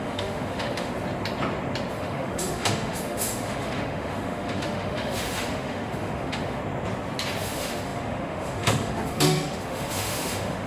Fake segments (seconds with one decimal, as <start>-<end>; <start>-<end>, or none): 0.0-0.9; 1.9-6.6; 7.4-10.7